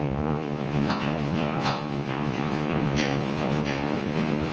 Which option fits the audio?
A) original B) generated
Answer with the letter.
B